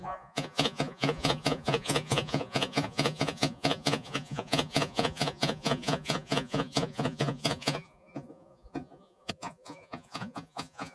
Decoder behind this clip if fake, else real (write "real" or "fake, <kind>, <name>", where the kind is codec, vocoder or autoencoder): fake, vocoder, Vocos